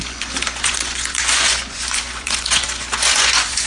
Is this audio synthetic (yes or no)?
yes